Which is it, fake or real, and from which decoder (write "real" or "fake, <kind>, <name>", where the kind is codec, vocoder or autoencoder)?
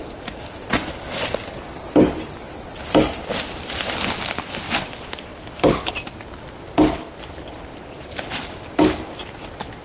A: real